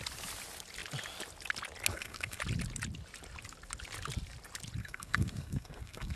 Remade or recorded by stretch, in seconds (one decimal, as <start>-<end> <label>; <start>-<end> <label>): 0.0-1.9 recorded; 1.9-2.4 remade; 2.4-4.8 recorded; 4.8-6.2 remade